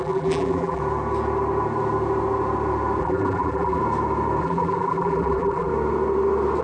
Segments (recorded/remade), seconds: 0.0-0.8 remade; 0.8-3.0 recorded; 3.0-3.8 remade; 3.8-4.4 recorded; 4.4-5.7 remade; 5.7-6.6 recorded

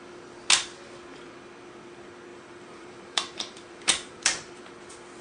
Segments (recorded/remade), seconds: 0.0-2.3 recorded; 2.3-4.7 remade; 4.7-5.2 recorded

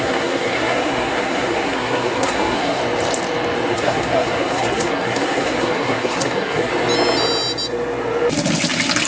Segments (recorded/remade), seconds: 0.0-2.8 remade; 2.8-3.7 recorded; 3.7-6.7 remade; 6.7-9.1 recorded

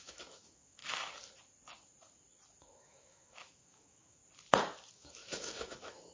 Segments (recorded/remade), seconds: 0.0-0.8 remade; 0.8-2.6 recorded; 2.6-4.2 remade; 4.2-4.9 recorded; 4.9-6.1 remade